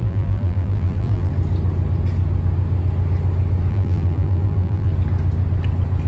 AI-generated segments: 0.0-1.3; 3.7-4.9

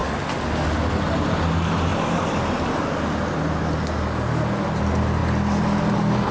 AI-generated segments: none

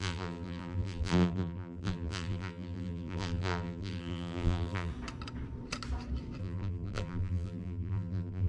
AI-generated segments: 0.0-4.9; 6.4-8.5

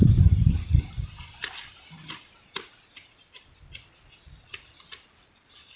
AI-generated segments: none